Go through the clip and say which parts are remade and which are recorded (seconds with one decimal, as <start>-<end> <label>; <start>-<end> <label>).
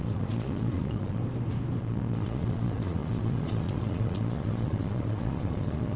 0.0-1.2 remade; 1.2-1.8 recorded; 1.8-6.0 remade